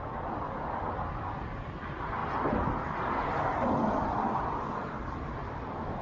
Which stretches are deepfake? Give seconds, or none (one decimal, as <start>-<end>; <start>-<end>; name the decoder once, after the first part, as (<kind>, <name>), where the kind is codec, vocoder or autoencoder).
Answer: 0.0-6.0 (vocoder, BigVGAN v2)